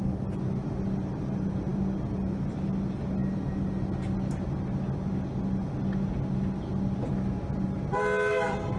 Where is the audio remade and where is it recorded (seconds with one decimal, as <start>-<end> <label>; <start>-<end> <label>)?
0.0-8.8 recorded